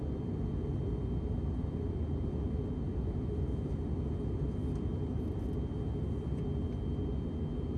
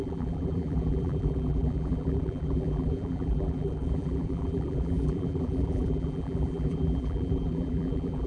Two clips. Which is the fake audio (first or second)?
second